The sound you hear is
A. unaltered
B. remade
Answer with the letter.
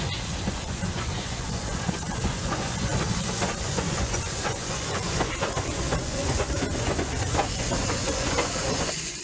B